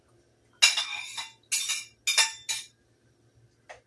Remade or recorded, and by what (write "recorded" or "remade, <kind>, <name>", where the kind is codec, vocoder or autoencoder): recorded